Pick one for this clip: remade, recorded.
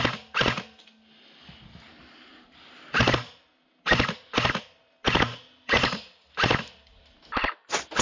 recorded